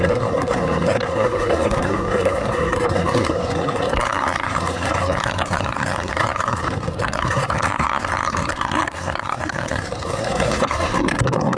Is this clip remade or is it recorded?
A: remade